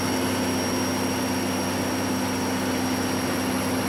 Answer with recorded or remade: recorded